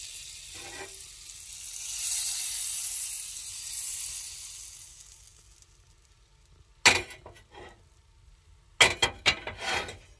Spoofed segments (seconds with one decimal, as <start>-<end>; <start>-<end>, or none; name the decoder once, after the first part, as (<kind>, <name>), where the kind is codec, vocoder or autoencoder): none